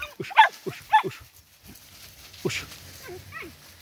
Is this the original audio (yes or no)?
yes